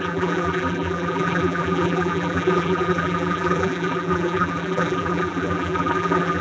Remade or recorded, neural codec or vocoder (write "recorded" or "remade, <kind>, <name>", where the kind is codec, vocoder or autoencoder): remade, vocoder, BigVGAN v2